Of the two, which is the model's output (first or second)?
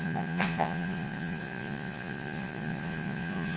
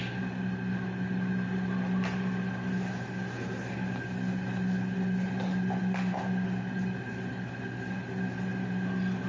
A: first